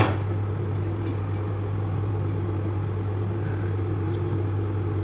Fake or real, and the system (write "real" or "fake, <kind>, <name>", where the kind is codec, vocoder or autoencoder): real